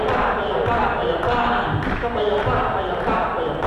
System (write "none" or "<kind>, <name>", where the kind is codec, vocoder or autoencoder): none